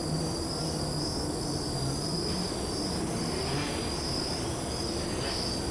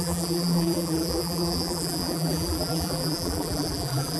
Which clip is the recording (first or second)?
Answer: first